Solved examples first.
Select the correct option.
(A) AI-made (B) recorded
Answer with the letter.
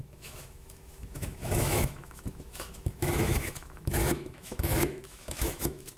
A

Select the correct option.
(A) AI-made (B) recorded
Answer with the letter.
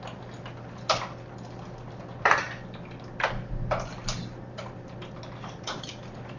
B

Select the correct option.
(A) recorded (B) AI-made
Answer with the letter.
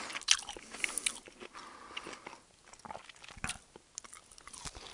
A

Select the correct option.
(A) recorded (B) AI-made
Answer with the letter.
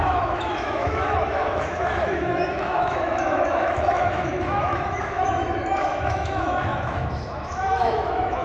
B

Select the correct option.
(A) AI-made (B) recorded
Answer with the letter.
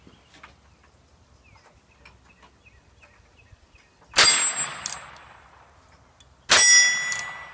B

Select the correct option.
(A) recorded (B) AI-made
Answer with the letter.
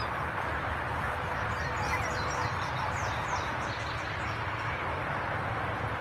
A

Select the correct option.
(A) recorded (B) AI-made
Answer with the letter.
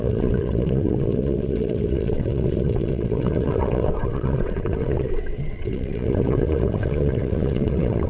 B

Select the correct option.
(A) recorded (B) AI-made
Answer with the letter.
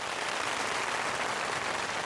A